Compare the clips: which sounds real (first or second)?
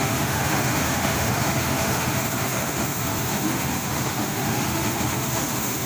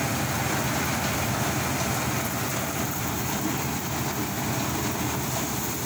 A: second